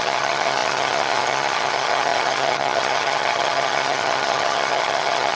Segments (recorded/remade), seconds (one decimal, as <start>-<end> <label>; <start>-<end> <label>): 0.0-5.3 remade